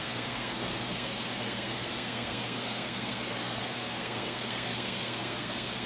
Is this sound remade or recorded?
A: remade